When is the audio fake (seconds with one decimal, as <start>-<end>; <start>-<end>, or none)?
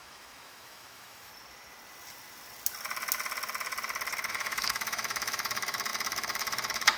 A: 0.0-1.3; 4.3-7.0